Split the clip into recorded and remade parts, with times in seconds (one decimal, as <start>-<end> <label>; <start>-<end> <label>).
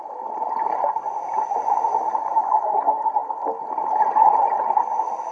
0.0-5.3 recorded